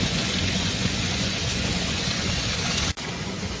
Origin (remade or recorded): remade